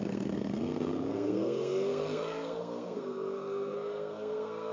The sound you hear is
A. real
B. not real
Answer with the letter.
B